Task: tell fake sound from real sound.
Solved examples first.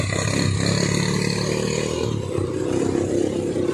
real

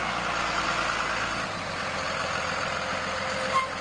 real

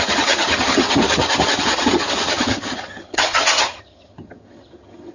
fake